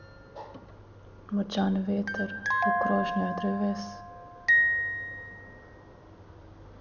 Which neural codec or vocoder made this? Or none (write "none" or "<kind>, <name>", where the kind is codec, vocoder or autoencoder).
none